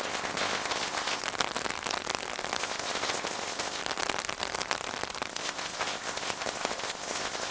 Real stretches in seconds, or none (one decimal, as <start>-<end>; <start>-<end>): 1.2-2.6; 3.8-5.3